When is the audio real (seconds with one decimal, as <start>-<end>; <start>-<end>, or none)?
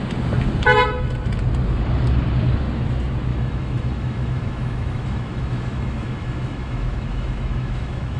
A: 0.0-3.3